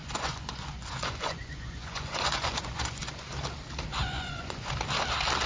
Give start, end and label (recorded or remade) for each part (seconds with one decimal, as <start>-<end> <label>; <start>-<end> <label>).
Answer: 0.0-3.3 remade; 3.3-3.9 recorded; 3.9-4.7 remade; 4.7-5.5 recorded

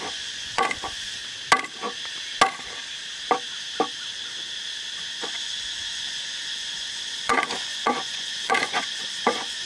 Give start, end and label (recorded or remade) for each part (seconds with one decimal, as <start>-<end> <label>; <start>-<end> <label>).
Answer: 0.0-1.2 remade; 1.2-5.2 recorded; 5.2-9.7 remade